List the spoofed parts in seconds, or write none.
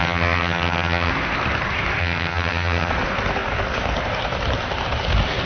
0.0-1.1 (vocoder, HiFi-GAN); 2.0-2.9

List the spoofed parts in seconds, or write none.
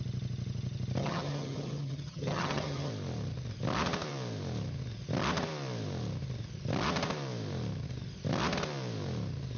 1.0-2.9 (vocoder, HiFi-GAN)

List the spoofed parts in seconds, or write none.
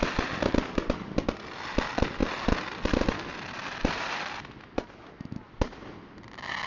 none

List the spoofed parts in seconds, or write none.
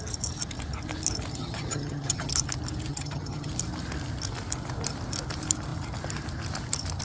1.4-2.3 (vocoder, HiFi-GAN); 2.9-3.5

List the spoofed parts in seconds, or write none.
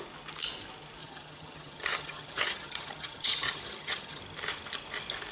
1.0-4.2 (vocoder, HiFi-GAN)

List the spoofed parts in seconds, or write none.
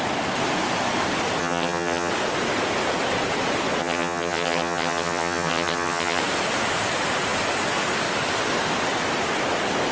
1.4-2.1 (vocoder, HiFi-GAN); 3.8-6.2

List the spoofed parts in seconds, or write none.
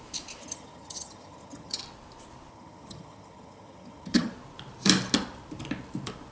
0.4-1.8 (vocoder, HiFi-GAN); 2.5-4.3